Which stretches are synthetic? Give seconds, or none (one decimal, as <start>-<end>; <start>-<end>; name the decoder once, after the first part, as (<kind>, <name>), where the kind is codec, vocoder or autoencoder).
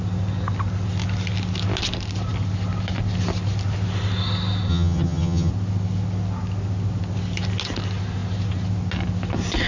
4.7-5.5 (vocoder, HiFi-GAN)